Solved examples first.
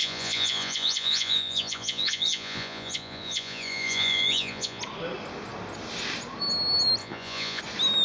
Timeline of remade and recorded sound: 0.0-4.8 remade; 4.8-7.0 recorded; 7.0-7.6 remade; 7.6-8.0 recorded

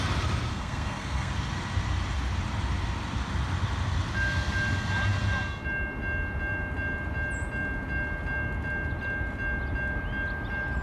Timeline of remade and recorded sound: 0.0-0.5 recorded; 0.5-1.3 remade; 1.3-10.8 recorded